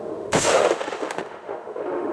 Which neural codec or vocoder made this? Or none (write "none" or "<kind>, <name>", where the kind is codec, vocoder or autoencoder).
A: autoencoder, DAC-VAE